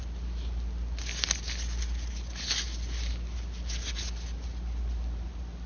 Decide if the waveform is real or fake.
real